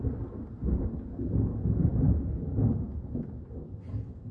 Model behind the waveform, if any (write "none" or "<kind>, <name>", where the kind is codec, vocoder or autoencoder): none